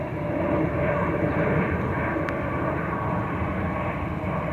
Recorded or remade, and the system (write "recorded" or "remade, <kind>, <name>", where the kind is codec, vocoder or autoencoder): recorded